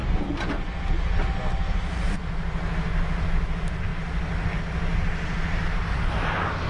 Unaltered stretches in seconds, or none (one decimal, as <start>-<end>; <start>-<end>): 0.0-6.7